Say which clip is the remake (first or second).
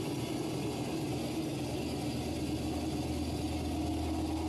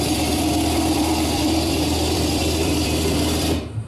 second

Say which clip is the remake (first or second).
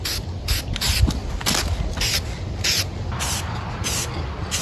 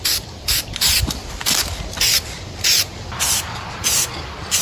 second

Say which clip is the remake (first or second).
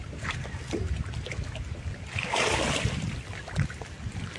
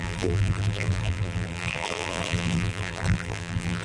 second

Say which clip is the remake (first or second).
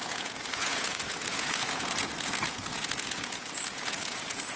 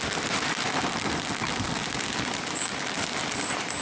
first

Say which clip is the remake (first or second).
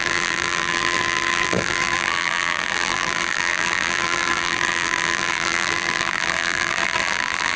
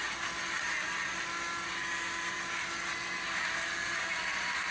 first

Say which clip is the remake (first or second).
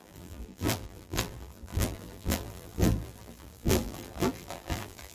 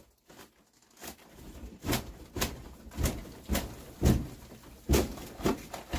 first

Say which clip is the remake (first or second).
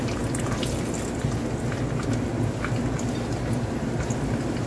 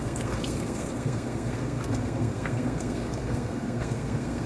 second